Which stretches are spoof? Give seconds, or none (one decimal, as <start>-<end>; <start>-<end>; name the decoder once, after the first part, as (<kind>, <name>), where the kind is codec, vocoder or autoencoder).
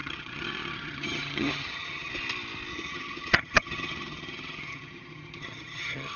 0.0-2.1 (vocoder, HiFi-GAN); 2.7-6.2